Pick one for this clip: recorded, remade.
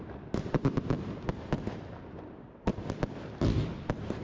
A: recorded